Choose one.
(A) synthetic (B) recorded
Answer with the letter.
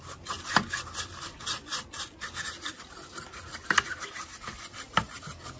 B